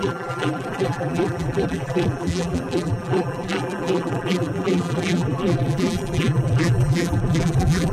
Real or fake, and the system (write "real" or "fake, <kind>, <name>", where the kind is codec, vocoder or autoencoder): fake, vocoder, BigVGAN v2